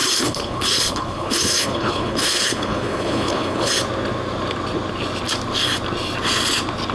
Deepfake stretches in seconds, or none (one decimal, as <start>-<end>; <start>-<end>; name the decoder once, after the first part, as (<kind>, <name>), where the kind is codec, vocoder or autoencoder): 0.0-3.7 (codec, HILCodec)